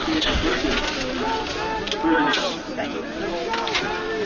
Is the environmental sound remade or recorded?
recorded